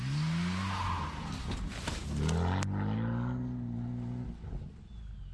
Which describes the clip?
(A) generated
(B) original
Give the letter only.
B